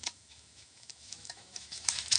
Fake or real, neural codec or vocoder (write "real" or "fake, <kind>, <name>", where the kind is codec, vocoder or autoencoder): fake, autoencoder, DAC-VAE